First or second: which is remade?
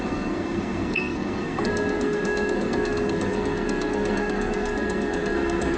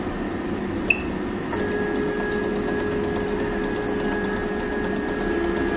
first